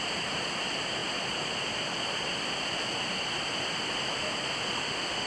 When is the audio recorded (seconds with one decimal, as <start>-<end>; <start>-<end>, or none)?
0.0-4.7